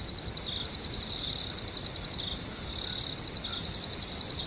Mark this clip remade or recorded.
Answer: recorded